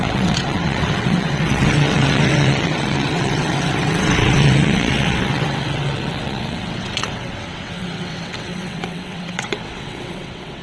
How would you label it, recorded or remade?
remade